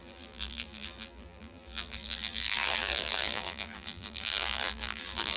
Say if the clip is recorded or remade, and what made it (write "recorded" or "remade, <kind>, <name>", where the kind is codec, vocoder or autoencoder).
remade, vocoder, BigVGAN v2